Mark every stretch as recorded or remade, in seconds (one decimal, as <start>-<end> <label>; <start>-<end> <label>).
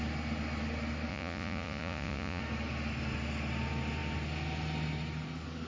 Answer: 0.0-1.1 recorded; 1.1-2.4 remade; 2.4-5.7 recorded